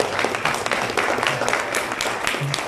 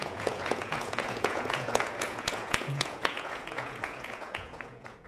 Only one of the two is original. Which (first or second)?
first